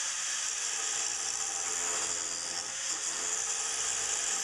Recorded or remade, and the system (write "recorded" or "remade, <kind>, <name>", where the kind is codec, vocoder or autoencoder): recorded